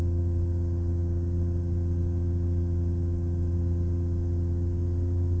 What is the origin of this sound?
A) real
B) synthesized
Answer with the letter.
A